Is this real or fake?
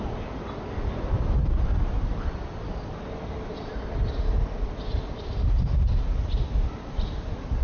real